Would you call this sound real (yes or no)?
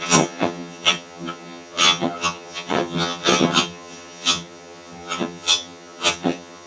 no